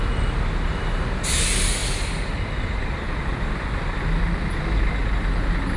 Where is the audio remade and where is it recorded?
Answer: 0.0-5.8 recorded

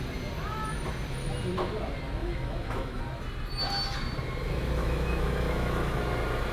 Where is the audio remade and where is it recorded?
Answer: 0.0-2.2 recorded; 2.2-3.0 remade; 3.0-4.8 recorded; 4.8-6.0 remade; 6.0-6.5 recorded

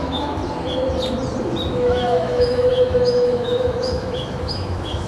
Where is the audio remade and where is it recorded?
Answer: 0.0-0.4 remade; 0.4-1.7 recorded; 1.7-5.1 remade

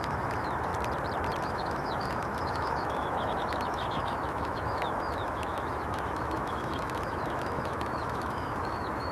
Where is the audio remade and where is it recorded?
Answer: 0.0-0.7 remade; 0.7-1.4 recorded; 1.4-9.1 remade

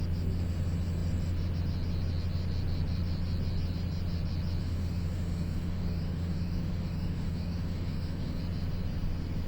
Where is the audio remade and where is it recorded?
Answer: 0.0-4.6 recorded; 4.6-8.4 remade; 8.4-9.5 recorded

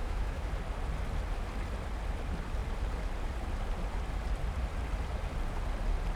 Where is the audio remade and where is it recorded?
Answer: 0.0-0.5 remade; 0.5-6.2 recorded